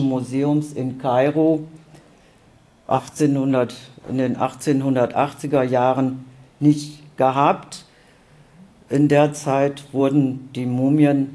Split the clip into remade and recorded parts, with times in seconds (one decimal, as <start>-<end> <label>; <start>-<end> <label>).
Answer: 0.0-2.5 recorded; 2.5-3.2 remade; 3.2-11.3 recorded